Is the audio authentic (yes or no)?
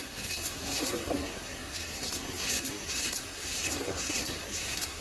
no